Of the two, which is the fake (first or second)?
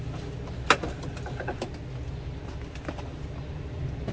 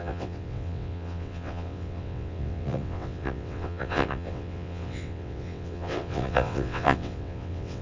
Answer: second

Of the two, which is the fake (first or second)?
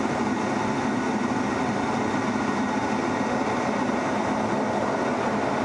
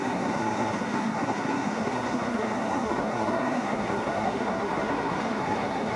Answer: second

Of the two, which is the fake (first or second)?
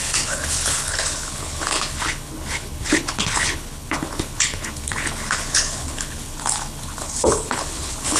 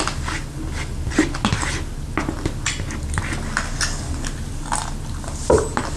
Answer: first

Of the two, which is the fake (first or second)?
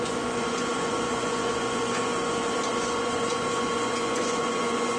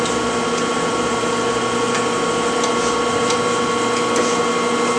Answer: first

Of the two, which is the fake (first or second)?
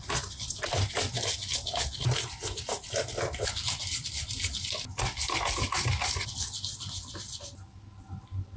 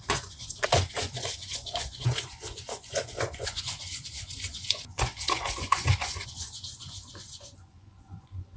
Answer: second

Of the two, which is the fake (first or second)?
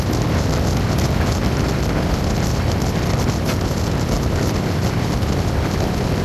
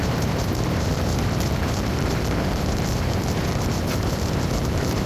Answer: second